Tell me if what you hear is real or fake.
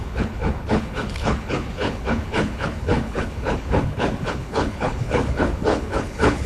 fake